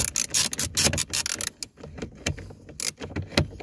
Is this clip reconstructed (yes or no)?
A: no